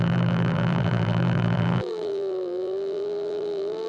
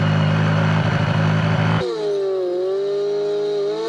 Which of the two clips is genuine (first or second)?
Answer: second